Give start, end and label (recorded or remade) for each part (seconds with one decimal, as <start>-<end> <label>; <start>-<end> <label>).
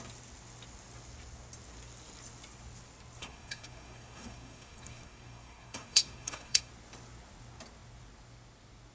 0.0-3.2 recorded; 3.2-6.7 remade; 6.7-8.9 recorded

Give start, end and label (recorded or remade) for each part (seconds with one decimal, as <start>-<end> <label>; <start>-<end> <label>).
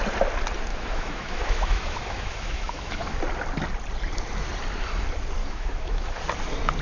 0.0-0.7 recorded; 0.7-3.2 remade; 3.2-5.4 recorded; 5.4-6.2 remade; 6.2-6.8 recorded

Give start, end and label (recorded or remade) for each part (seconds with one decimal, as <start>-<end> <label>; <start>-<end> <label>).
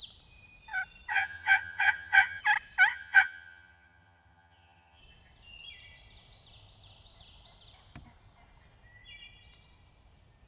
0.0-1.1 recorded; 1.1-2.4 remade; 2.4-2.9 recorded; 2.9-5.0 remade; 5.0-10.5 recorded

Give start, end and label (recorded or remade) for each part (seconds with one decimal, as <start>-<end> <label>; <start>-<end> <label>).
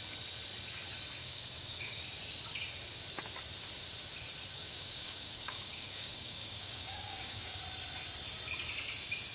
0.0-1.2 recorded; 1.2-2.0 remade; 2.0-4.5 recorded; 4.5-7.6 remade; 7.6-9.3 recorded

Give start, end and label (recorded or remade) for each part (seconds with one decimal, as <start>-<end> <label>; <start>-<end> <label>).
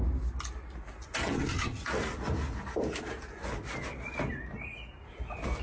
0.0-1.2 recorded; 1.2-1.8 remade; 1.8-5.6 recorded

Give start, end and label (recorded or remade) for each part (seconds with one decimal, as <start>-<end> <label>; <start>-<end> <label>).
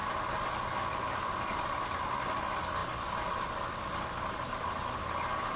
0.0-5.6 recorded